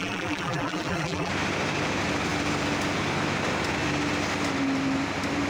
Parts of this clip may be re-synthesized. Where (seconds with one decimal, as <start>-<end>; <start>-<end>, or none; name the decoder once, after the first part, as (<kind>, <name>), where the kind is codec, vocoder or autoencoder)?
0.0-1.3 (vocoder, BigVGAN v2)